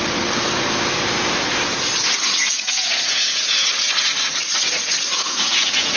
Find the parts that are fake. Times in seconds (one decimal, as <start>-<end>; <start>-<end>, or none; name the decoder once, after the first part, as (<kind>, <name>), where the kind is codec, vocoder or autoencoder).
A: 2.4-3.7 (vocoder, Vocos); 5.1-6.0